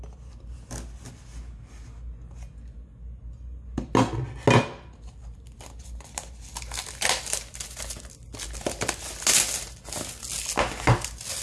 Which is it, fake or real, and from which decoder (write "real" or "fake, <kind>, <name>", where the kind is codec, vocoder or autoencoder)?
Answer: real